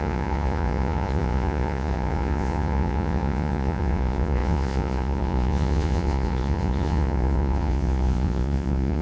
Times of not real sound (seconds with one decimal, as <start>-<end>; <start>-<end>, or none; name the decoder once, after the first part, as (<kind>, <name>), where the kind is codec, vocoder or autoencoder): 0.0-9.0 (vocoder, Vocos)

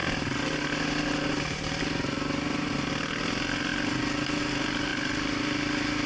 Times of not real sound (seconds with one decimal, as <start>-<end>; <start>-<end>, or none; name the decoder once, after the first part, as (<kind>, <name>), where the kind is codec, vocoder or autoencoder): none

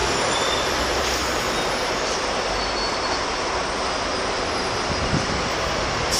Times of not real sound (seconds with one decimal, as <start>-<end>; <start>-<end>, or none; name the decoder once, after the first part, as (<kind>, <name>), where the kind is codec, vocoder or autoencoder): 0.0-3.6 (vocoder, BigVGAN v2)